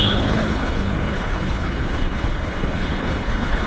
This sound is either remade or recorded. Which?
remade